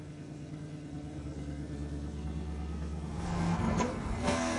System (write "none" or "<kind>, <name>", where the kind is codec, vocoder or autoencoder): codec, SNAC